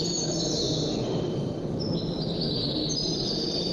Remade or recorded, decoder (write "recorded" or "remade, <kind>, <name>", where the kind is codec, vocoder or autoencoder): recorded